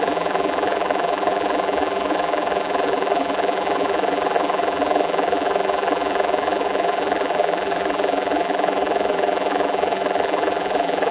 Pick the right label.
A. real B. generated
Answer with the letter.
B